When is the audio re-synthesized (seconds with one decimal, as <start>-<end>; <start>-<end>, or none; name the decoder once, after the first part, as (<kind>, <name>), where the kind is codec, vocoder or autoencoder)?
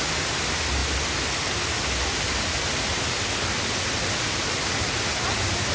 none